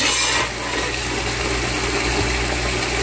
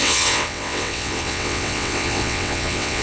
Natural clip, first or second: first